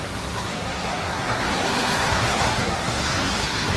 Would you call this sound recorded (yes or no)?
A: no